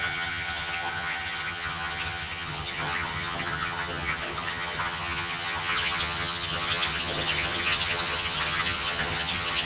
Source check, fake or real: fake